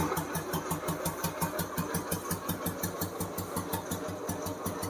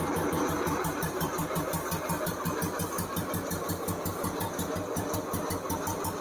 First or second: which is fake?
second